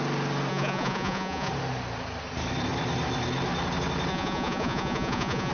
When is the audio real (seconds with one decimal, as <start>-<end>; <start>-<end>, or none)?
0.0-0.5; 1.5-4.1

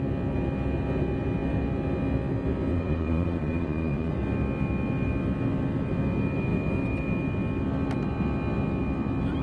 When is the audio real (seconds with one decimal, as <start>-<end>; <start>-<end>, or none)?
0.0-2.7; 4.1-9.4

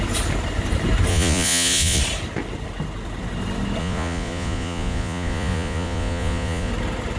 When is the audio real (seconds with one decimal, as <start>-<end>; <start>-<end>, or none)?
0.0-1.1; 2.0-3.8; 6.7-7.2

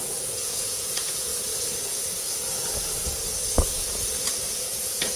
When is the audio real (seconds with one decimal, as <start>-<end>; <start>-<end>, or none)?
1.3-4.2

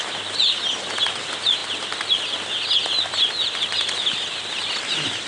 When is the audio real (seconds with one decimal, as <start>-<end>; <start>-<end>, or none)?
0.0-5.3

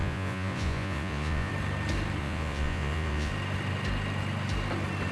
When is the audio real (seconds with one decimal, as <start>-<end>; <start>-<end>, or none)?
1.5-2.2; 3.3-5.1